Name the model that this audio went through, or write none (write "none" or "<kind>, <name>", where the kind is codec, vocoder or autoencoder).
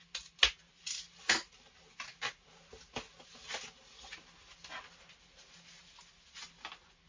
none